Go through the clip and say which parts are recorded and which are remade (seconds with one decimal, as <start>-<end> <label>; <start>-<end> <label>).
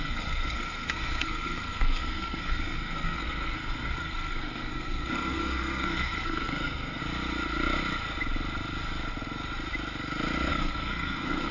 0.0-7.0 remade; 7.0-10.5 recorded; 10.5-11.5 remade